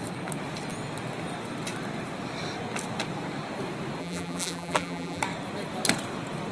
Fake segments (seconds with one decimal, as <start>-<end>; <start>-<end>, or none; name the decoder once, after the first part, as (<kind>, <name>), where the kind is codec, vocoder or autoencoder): 4.0-5.2 (vocoder, BigVGAN v2)